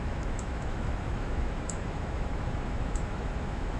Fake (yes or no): yes